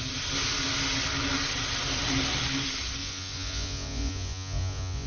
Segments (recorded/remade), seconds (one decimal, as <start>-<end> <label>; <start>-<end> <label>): 0.0-3.0 recorded; 3.0-5.1 remade